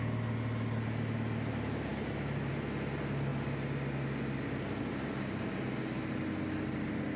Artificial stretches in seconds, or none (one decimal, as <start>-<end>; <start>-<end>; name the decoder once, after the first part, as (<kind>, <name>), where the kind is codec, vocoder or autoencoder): none